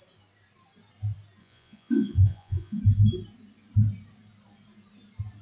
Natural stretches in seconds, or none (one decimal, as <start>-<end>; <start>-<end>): 0.0-1.4; 2.8-5.4